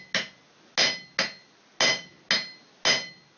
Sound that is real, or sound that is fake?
real